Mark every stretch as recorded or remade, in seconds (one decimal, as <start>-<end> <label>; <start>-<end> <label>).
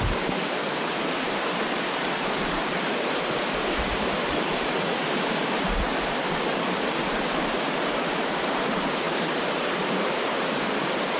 0.0-6.2 remade; 6.2-8.2 recorded; 8.2-11.2 remade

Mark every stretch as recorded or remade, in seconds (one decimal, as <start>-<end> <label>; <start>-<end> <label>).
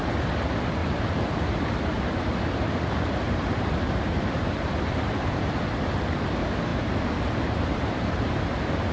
0.0-0.8 recorded; 0.8-5.6 remade; 5.6-6.7 recorded; 6.7-8.4 remade; 8.4-8.9 recorded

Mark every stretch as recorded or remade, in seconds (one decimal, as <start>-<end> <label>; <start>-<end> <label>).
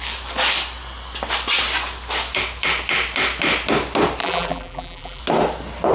0.0-4.2 recorded; 4.2-5.2 remade; 5.2-5.9 recorded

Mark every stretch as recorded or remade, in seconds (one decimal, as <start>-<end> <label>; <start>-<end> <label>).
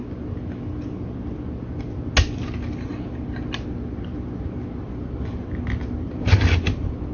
0.0-7.1 recorded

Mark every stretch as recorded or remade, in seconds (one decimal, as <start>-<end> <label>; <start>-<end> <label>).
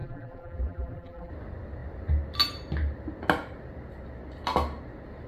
0.0-1.3 remade; 1.3-5.3 recorded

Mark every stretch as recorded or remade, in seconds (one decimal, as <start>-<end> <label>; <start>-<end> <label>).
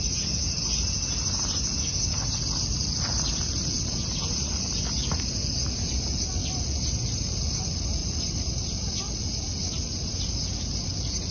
0.0-8.0 recorded; 8.0-10.6 remade; 10.6-11.3 recorded